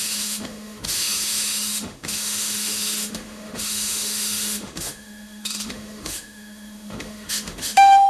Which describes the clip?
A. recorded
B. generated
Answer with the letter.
B